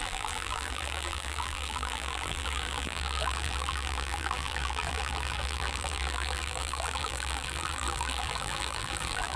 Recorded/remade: remade